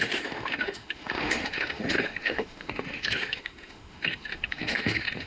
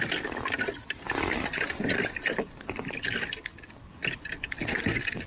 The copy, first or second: first